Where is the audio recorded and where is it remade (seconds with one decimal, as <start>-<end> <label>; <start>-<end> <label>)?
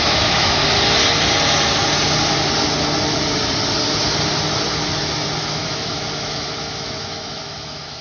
0.0-0.6 remade; 0.6-5.4 recorded; 5.4-8.0 remade